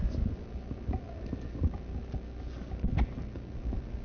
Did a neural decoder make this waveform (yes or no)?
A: no